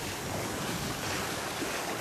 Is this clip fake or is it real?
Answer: fake